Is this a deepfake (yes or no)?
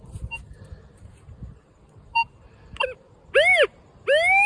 no